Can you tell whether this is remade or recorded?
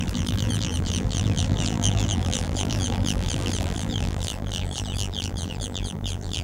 remade